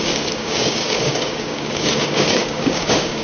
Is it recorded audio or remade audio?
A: remade